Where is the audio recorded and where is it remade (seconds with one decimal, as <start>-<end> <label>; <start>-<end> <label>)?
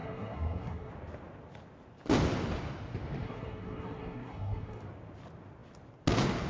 0.0-0.9 remade; 0.9-3.2 recorded; 3.2-4.8 remade; 4.8-6.5 recorded